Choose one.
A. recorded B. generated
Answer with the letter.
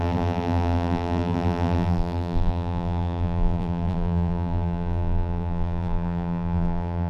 B